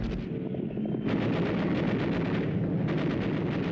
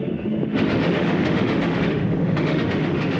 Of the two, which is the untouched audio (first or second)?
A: first